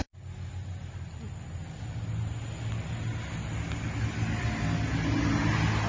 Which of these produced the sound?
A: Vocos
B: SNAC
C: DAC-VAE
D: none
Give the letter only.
D